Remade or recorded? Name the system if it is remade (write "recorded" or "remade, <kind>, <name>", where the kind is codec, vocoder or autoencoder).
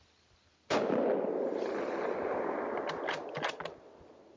recorded